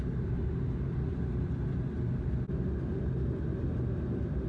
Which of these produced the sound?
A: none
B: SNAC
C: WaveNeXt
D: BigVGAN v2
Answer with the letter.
A